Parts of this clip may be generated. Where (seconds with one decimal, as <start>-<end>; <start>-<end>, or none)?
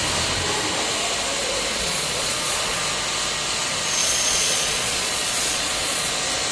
1.7-2.8; 4.0-6.1